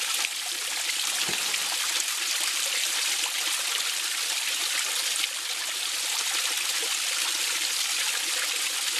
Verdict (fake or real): real